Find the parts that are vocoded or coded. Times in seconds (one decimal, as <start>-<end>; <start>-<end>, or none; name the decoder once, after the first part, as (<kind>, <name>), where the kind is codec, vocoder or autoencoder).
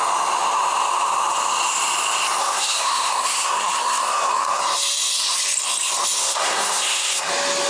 2.4-4.6 (codec, SNAC); 6.2-7.3